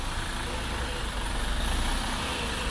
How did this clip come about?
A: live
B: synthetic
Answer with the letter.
A